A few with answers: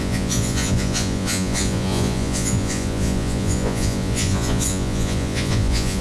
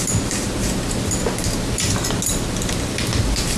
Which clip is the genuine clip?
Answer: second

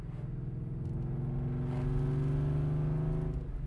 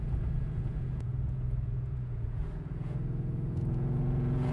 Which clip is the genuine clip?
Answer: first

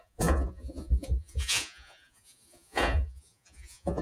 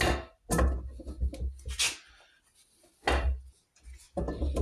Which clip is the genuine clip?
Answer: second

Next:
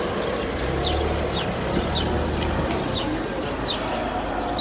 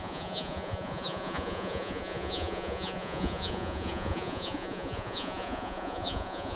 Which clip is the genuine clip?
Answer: first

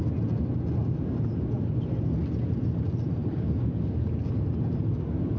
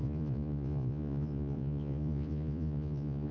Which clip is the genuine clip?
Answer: first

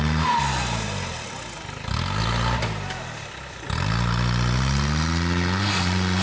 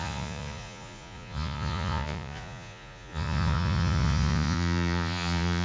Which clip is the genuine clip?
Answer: first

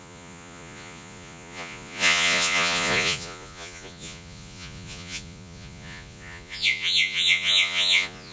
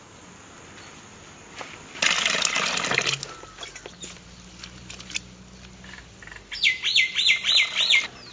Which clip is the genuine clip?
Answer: second